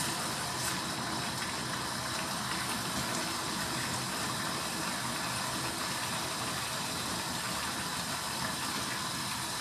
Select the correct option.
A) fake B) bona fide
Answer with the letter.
B